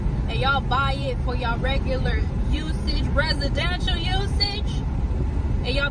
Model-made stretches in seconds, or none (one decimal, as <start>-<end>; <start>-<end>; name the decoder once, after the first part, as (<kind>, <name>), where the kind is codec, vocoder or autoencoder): 1.0-3.0 (vocoder, BigVGAN v2); 4.1-5.4